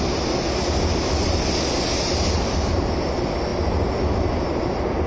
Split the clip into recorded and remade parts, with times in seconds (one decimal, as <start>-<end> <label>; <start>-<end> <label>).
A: 0.0-5.1 recorded